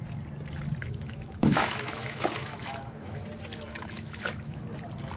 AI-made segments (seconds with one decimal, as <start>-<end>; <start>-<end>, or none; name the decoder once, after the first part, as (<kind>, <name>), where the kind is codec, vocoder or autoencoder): 0.8-3.2 (autoencoder, DAC-VAE); 3.7-4.6